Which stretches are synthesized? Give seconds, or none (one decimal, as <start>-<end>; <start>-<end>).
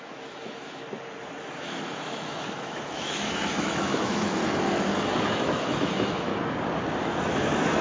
0.0-0.8; 1.4-4.4; 5.0-6.3; 7.2-7.8